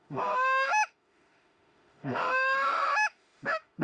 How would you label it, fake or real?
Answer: fake